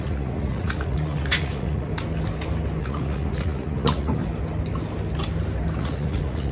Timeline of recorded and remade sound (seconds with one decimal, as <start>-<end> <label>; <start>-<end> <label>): 0.0-1.9 remade; 1.9-2.8 recorded; 2.8-4.2 remade; 4.2-5.8 recorded; 5.8-6.5 remade